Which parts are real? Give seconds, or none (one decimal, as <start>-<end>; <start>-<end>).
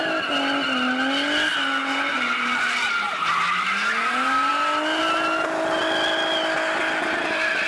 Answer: 0.0-7.7